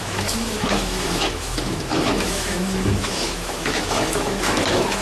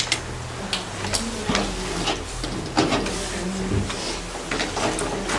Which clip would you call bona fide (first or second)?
second